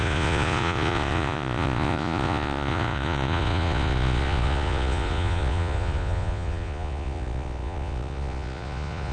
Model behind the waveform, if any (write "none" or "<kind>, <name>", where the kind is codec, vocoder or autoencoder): vocoder, Vocos